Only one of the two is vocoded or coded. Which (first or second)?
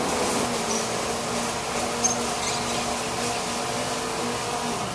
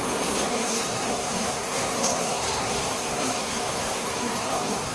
second